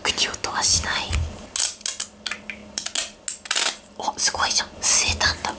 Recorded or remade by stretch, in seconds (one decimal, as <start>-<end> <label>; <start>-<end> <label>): 0.0-5.6 recorded